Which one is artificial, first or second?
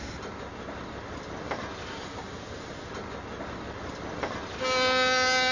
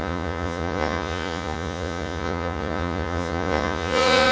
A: second